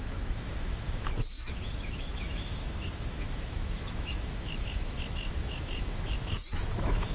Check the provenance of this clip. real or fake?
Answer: fake